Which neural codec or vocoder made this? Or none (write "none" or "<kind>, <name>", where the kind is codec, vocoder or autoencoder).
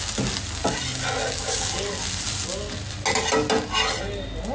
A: none